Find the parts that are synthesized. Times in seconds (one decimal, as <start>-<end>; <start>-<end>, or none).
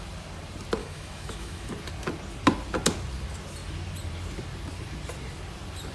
0.8-1.7